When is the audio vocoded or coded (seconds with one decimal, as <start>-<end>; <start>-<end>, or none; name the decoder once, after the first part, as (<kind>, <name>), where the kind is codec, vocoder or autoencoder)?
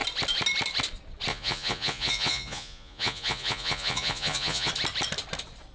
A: 1.3-4.7 (vocoder, Vocos)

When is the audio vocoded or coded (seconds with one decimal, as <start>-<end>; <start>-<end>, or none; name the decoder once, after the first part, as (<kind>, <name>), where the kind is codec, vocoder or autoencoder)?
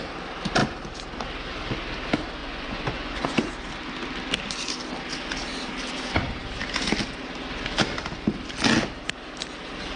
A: 2.4-3.5 (vocoder, Vocos)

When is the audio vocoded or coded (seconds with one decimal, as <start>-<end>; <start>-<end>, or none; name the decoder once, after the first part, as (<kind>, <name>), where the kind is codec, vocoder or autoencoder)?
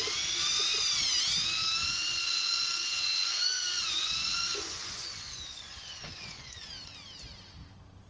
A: 1.8-6.7 (vocoder, Vocos)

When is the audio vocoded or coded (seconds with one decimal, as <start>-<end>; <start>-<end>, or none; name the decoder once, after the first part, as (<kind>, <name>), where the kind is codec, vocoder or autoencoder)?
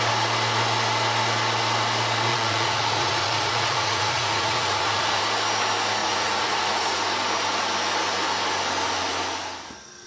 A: 2.3-5.2 (vocoder, Vocos); 6.0-7.1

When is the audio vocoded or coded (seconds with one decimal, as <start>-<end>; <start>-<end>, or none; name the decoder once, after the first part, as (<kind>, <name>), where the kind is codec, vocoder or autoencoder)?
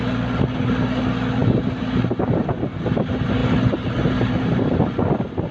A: none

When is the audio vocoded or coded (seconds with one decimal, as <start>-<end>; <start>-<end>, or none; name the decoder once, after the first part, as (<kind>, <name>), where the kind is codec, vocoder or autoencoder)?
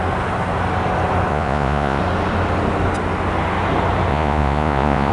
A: 1.3-2.0 (vocoder, Vocos); 4.1-5.1